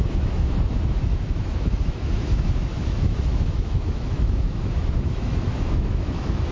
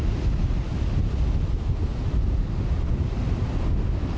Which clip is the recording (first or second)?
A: second